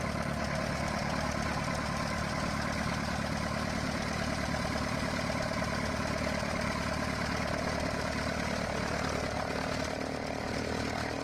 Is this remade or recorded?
recorded